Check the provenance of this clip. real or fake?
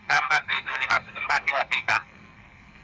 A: fake